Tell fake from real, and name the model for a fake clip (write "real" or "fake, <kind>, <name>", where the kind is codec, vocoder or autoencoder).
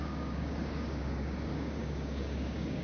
fake, codec, DAC